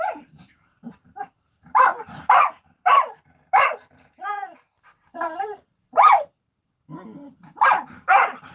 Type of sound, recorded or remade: remade